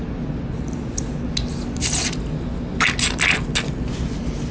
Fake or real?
real